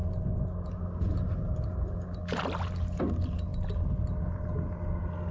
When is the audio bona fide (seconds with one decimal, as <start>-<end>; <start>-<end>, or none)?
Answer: 0.0-5.3

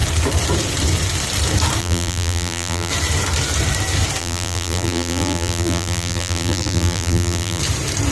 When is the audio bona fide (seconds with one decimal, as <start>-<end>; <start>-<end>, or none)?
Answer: 0.0-1.8; 2.9-4.2; 7.6-8.1

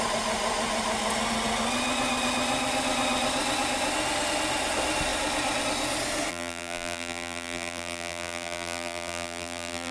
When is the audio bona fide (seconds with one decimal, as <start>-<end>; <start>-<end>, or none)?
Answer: 0.0-6.3

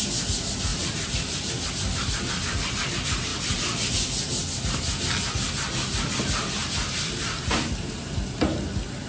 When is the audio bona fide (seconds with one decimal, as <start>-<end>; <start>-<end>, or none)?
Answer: 0.0-0.7; 2.8-3.3; 3.9-6.6; 8.0-9.1

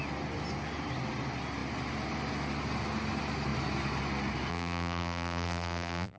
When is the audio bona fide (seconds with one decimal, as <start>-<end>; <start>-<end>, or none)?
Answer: 0.0-4.5